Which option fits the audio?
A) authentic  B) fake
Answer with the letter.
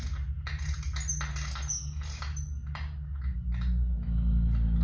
A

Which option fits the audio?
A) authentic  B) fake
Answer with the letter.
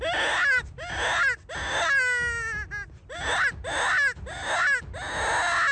A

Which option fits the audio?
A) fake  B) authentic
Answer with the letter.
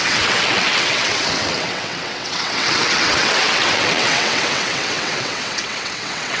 A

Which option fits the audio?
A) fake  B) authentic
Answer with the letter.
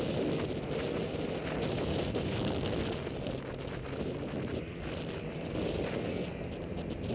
B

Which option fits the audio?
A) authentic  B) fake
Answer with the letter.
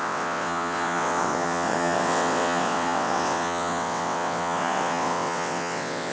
B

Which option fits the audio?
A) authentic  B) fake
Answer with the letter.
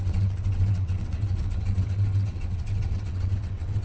B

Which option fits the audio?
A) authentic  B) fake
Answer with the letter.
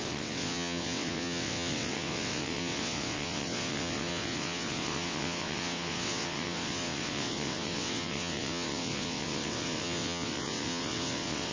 B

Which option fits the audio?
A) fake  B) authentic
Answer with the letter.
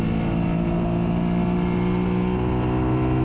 B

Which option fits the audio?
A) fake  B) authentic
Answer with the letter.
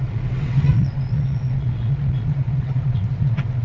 A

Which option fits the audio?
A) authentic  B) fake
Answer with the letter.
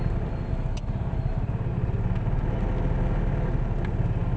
A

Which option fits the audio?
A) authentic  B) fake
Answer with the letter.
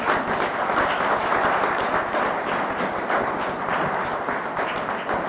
A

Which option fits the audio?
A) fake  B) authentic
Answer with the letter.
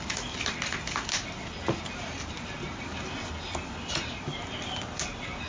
B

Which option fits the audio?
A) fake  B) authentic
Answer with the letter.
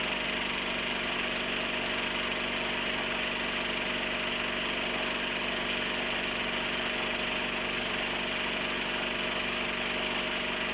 B